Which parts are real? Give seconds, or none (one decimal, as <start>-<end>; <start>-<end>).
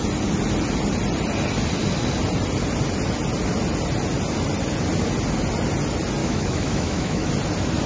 0.0-6.2; 7.3-7.9